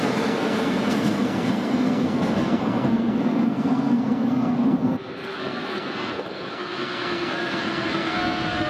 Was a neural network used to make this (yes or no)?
yes